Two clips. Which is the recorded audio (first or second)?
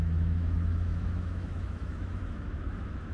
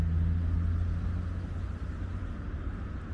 second